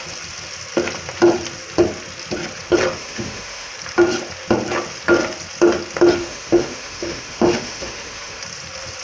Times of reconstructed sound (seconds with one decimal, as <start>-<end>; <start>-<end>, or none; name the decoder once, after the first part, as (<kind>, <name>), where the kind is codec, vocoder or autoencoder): 3.0-3.7 (autoencoder, DAC-VAE); 6.2-8.4